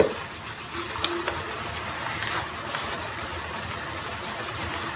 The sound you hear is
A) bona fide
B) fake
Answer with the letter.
A